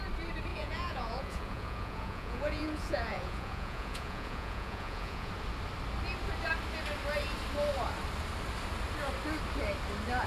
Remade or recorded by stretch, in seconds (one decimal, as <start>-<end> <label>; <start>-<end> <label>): 0.0-0.5 recorded; 0.5-5.3 remade; 5.3-10.3 recorded